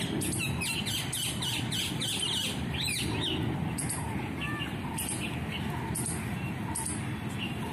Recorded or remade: recorded